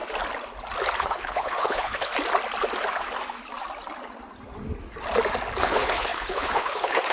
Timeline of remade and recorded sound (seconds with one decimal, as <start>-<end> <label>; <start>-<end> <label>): 0.0-1.0 recorded; 1.0-2.1 remade; 2.1-5.6 recorded; 5.6-7.1 remade

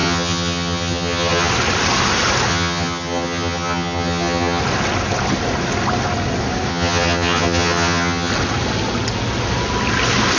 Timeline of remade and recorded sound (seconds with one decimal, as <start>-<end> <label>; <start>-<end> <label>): 0.0-1.5 remade; 1.5-2.5 recorded; 2.5-4.6 remade; 4.6-6.7 recorded; 6.7-8.3 remade; 8.3-10.4 recorded

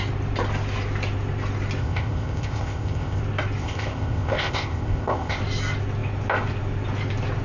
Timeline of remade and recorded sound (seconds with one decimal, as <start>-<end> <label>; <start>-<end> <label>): 0.0-1.8 recorded; 1.8-3.2 remade; 3.2-3.6 recorded; 3.6-5.4 remade; 5.4-7.4 recorded

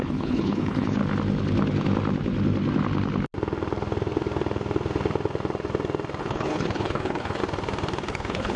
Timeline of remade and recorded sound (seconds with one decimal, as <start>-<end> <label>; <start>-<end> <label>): 0.0-1.0 remade; 1.0-6.2 recorded; 6.2-7.4 remade; 7.4-8.1 recorded; 8.1-8.6 remade